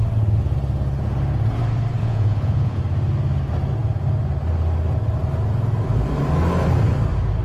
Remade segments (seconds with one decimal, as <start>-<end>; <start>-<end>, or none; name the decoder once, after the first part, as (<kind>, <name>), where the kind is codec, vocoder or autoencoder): 2.0-2.8 (vocoder, Vocos)